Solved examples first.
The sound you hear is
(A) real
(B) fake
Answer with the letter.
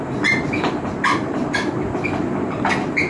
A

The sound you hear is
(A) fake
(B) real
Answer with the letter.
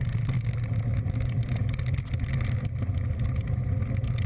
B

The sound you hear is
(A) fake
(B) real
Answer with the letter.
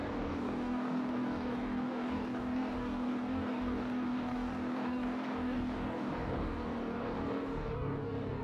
A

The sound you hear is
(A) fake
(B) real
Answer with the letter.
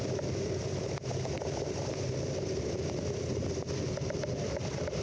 B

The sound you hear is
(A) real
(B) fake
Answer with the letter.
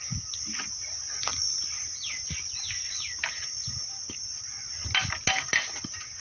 A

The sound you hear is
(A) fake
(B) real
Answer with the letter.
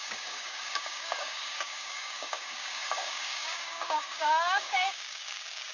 A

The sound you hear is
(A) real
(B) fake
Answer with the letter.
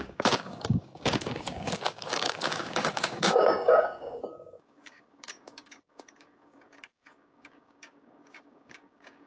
B